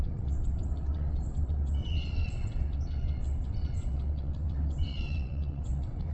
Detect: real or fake fake